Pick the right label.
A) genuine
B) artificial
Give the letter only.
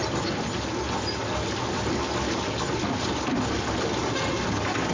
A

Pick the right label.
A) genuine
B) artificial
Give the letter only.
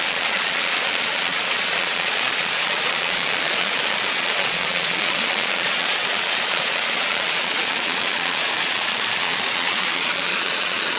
B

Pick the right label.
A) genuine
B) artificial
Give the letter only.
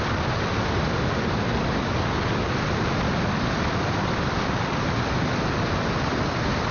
B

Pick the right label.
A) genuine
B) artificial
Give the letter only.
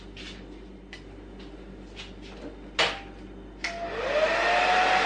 A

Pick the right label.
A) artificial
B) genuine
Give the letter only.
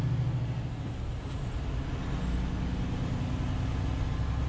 B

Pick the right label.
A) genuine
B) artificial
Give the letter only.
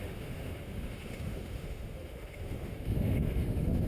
B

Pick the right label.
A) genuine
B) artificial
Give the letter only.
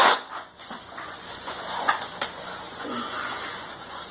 B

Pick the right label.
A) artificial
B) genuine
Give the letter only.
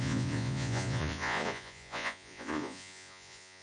A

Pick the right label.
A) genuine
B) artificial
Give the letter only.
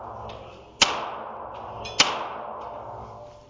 A